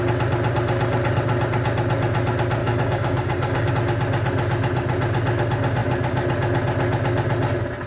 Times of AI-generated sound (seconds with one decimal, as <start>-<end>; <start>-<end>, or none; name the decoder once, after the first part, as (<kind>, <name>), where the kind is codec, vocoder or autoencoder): 2.6-3.7 (codec, DAC)